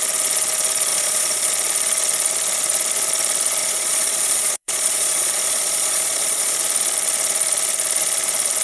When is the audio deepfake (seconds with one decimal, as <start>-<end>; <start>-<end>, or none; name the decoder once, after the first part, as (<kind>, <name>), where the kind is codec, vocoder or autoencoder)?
0.9-1.5 (vocoder, Vocos); 3.6-6.6